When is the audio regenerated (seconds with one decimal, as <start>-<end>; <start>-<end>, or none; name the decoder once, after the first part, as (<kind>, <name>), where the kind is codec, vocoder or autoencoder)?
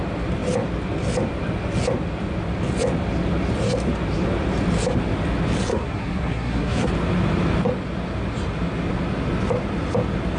5.7-6.9 (codec, SNAC)